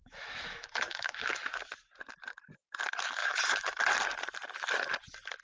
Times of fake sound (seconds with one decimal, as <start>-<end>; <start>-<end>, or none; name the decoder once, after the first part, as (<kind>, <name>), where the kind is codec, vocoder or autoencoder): 0.0-1.4 (autoencoder, DAC-VAE); 3.2-3.8